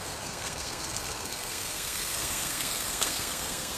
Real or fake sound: fake